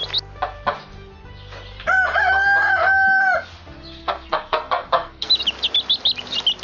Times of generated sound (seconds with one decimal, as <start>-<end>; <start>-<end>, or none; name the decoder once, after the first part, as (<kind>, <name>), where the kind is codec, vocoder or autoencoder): 4.0-5.3 (codec, SNAC)

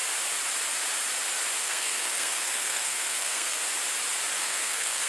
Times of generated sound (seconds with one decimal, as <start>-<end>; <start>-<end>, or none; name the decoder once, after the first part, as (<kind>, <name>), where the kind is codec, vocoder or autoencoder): 1.6-3.6 (codec, SNAC); 4.4-5.1

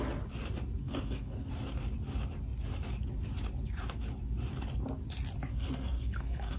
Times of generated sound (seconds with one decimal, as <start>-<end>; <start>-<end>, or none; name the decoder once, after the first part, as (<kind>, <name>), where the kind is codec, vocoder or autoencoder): 0.8-1.5 (codec, SNAC); 5.5-6.6

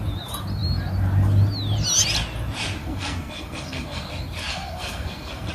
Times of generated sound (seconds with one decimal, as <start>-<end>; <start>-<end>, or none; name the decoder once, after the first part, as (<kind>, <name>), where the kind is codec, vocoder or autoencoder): 2.8-4.1 (codec, SNAC); 4.5-5.5

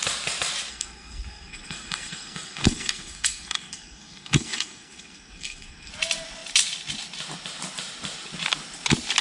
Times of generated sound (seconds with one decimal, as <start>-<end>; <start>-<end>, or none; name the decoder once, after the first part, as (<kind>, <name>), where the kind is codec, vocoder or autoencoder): 0.7-5.9 (codec, SNAC)

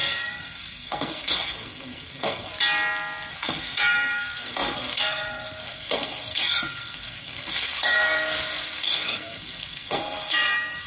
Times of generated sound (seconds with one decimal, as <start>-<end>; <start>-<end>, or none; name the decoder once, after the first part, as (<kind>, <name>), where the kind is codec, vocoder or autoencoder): 0.0-2.5 (codec, SNAC); 3.3-10.9

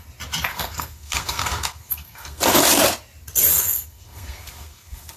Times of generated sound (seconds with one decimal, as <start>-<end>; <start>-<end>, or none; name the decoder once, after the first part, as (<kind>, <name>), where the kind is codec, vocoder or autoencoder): 0.5-2.4 (codec, SNAC); 3.5-5.2

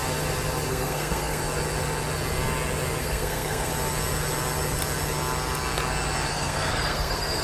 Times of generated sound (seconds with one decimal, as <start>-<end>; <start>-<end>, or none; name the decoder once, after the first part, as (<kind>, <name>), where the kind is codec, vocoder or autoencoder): 0.7-1.4 (codec, SNAC); 3.0-3.7; 6.3-7.4